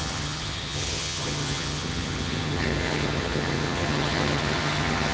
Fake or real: fake